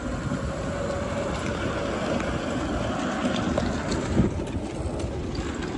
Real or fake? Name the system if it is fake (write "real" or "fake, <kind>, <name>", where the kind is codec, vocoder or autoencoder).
real